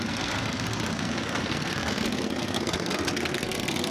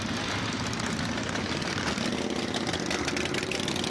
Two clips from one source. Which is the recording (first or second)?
second